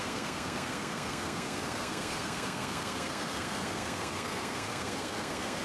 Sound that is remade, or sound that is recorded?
remade